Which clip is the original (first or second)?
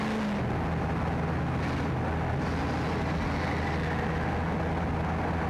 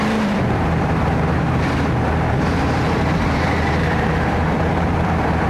first